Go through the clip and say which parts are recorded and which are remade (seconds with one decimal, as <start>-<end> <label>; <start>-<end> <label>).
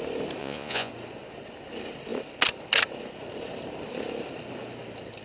0.0-0.4 recorded; 0.4-0.9 remade; 0.9-5.2 recorded